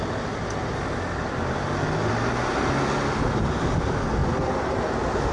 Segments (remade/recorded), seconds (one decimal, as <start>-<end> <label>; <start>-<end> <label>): 0.0-5.3 recorded